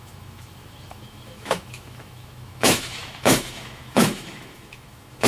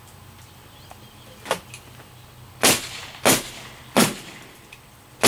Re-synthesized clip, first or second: first